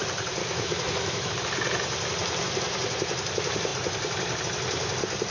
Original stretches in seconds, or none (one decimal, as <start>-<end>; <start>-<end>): 0.0-0.4; 1.3-5.3

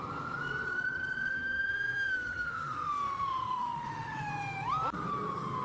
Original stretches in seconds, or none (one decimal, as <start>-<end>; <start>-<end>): 0.0-1.3; 4.3-5.6

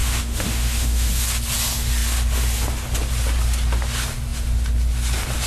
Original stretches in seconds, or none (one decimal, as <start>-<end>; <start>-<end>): 1.1-5.5

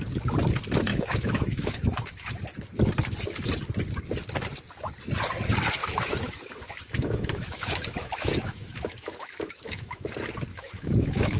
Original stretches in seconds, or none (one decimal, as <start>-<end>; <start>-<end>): 0.0-0.9; 2.3-5.8; 10.1-10.5

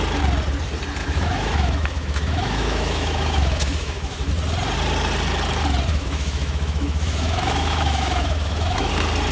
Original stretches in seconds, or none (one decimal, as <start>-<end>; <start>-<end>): 0.0-1.0; 4.3-5.9; 8.9-9.3

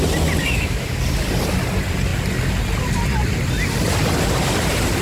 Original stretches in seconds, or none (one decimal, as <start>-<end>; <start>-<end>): 0.0-0.4; 1.0-5.0